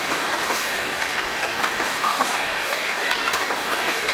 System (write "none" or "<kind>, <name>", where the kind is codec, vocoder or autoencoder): codec, DAC